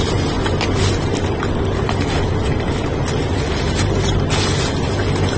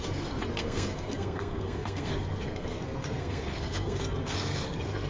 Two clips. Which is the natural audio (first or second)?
first